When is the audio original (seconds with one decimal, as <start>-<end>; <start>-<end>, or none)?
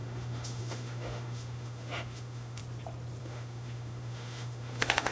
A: 2.6-3.2